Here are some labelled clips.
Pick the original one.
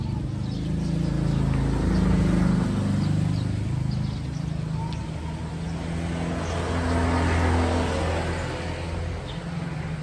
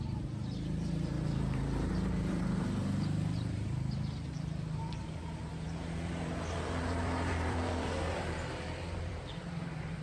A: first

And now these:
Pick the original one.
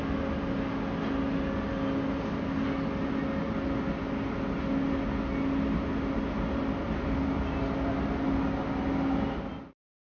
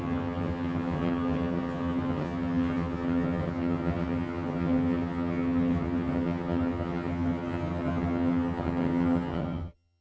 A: first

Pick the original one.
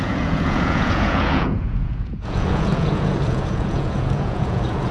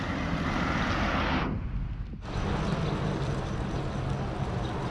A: second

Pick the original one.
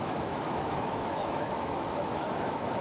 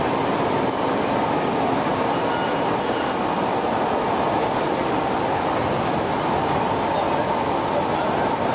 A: second